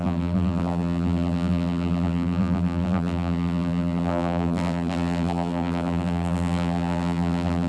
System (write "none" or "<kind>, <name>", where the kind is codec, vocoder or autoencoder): vocoder, BigVGAN v2